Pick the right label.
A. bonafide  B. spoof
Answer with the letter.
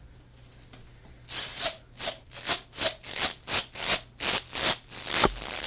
A